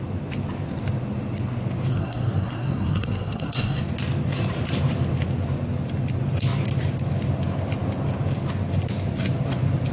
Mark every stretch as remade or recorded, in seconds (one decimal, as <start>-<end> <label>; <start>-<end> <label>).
0.0-1.9 recorded; 1.9-3.8 remade; 3.8-9.9 recorded